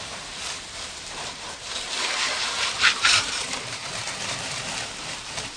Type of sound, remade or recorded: remade